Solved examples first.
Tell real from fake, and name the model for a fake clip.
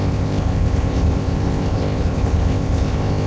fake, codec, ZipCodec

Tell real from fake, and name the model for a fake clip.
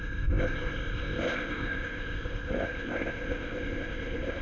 fake, codec, ZipCodec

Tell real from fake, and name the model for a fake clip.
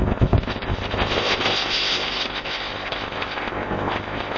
fake, codec, ZipCodec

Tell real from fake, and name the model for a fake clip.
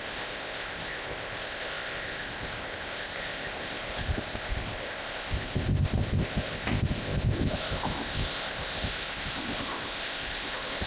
fake, codec, ZipCodec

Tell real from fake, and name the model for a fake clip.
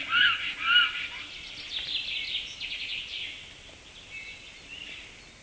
real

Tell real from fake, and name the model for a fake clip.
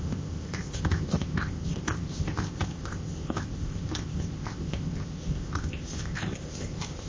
fake, codec, ZipCodec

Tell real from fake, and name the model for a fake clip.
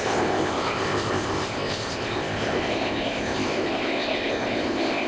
fake, codec, ZipCodec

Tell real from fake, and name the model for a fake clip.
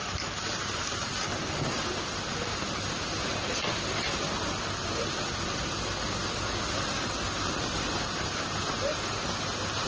real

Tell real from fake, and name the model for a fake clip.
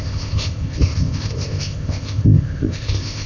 fake, codec, ZipCodec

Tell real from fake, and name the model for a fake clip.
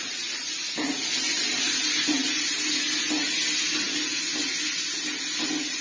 real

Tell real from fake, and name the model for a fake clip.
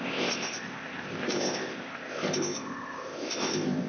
fake, codec, ZipCodec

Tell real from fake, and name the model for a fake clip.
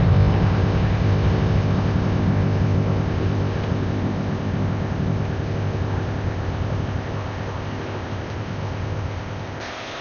fake, codec, ZipCodec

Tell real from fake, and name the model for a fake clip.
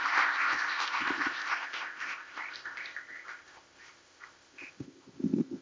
fake, codec, ZipCodec